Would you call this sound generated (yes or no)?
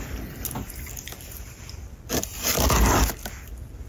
no